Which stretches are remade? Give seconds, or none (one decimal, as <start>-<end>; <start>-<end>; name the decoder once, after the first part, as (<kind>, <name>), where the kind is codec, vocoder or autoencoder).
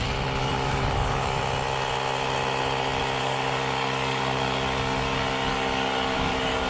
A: 0.4-1.4 (codec, DAC); 3.2-6.7